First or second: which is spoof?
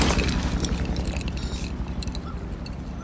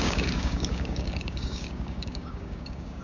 second